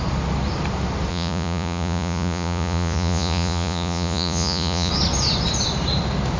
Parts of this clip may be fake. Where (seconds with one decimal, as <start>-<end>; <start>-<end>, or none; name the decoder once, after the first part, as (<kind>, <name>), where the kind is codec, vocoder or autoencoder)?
1.1-4.9 (vocoder, Vocos)